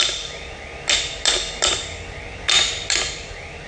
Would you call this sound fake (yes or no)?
no